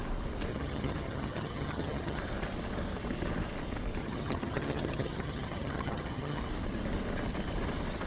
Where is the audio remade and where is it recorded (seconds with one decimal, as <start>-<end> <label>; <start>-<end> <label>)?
0.0-0.5 recorded; 0.5-2.2 remade; 2.2-4.0 recorded; 4.0-6.4 remade; 6.4-8.1 recorded